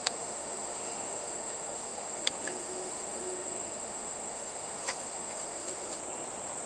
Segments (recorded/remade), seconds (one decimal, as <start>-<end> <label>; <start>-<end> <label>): 0.0-6.0 remade; 6.0-6.7 recorded